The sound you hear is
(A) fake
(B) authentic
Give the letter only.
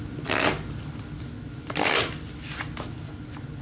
B